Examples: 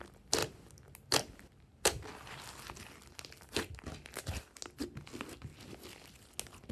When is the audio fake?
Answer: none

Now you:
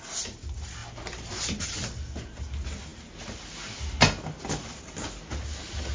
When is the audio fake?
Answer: none